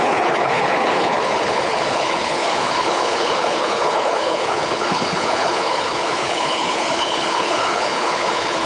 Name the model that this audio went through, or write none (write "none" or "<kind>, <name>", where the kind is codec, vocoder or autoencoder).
codec, HILCodec